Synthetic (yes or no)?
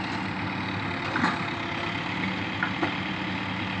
no